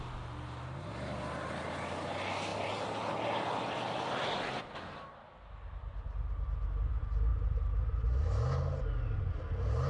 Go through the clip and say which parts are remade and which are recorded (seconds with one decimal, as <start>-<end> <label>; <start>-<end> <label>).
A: 0.0-9.9 recorded